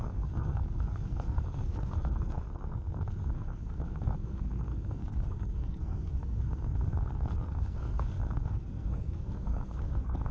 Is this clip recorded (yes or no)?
no